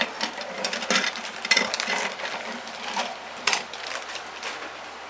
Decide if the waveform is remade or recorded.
recorded